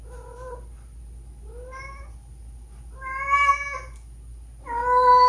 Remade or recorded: recorded